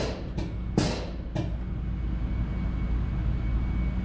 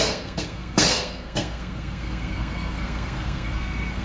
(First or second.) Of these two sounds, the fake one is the second